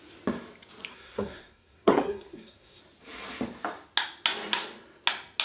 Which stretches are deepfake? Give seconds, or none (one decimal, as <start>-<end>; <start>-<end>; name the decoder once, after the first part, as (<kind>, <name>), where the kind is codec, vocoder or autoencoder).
0.9-2.8 (codec, SNAC)